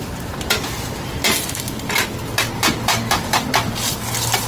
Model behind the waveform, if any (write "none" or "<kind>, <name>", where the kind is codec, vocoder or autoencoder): none